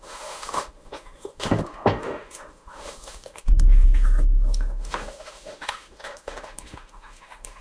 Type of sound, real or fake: fake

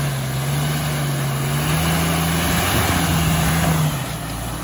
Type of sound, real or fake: real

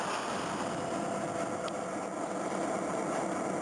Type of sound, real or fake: real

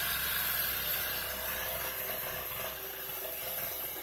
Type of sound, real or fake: real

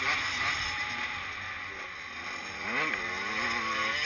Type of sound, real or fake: real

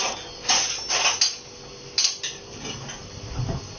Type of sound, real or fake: real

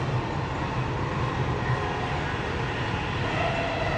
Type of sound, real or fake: real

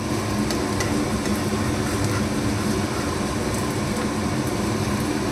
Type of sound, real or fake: real